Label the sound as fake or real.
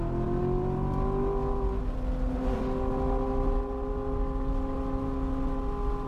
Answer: real